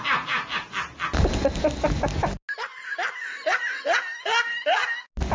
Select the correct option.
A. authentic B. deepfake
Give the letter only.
A